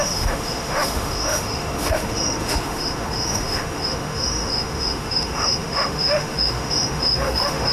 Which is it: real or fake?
fake